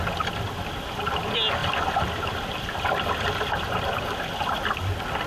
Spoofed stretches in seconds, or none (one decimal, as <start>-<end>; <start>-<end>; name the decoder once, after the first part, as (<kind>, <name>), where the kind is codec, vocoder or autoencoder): 1.6-4.8 (vocoder, BigVGAN v2)